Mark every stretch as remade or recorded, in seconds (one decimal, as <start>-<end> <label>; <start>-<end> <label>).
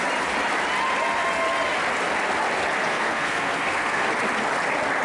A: 0.0-2.9 recorded; 2.9-4.1 remade; 4.1-5.0 recorded